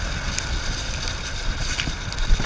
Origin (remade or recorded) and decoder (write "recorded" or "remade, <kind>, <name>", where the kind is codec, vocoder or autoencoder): recorded